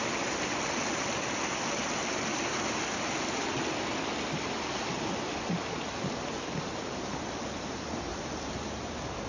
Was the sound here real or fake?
real